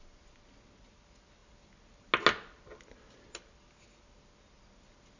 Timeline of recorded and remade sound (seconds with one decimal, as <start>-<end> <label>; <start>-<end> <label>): 0.0-5.2 recorded